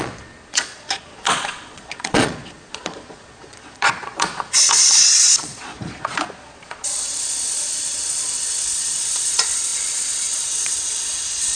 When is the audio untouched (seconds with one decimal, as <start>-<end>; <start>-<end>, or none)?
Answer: none